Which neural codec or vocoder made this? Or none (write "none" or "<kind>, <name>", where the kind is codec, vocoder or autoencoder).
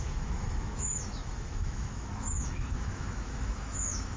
autoencoder, DAC-VAE